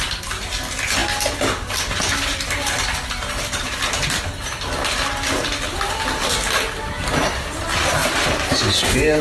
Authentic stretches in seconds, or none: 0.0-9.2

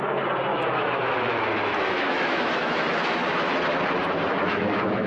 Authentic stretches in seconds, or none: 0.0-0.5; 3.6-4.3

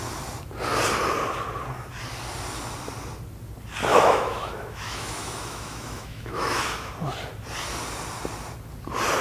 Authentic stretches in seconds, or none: 0.0-3.9; 6.9-9.2

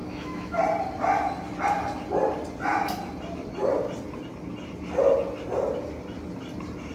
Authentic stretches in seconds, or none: 0.6-6.9

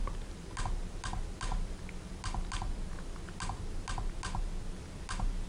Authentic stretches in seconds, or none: 0.0-5.5

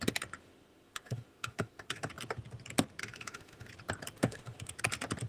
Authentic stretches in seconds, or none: 0.0-0.4; 2.1-3.0; 3.7-4.2; 4.8-5.3

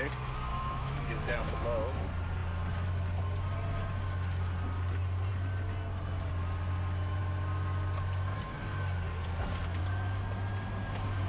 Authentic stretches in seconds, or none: 0.0-0.5; 2.0-11.3

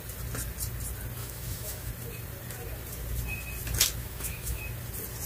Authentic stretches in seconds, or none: 0.0-1.2; 1.9-4.0; 4.6-5.3